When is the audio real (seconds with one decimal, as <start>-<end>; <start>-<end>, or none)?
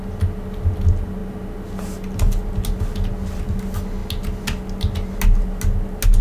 0.0-6.2